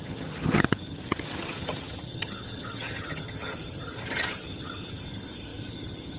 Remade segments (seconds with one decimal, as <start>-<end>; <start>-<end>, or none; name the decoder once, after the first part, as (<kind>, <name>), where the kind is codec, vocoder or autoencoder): 0.0-6.2 (vocoder, HiFi-GAN)